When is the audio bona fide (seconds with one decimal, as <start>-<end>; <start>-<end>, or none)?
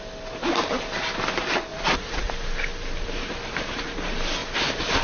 0.0-1.7; 2.3-5.0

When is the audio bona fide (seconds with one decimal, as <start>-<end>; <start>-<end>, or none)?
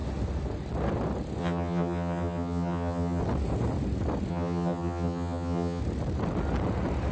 0.0-1.4; 3.2-4.3; 5.8-7.1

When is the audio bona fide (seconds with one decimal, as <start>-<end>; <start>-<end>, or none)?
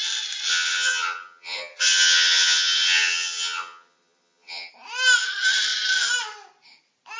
0.0-0.5; 4.7-7.2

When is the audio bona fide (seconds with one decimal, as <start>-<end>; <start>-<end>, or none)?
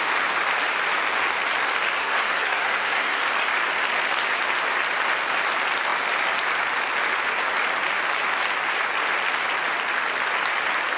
0.0-2.0; 3.2-11.0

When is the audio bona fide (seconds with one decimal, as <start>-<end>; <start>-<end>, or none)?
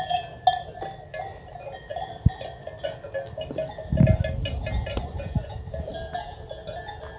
0.0-4.9; 5.5-7.2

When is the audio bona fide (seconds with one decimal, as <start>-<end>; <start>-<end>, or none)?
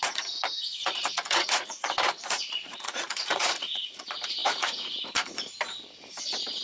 4.0-4.4; 5.5-6.6